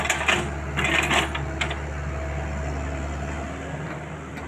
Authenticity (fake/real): real